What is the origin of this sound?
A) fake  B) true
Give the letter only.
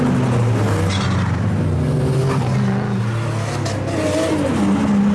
B